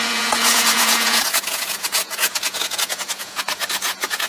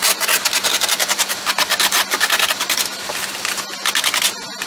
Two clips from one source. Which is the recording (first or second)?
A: second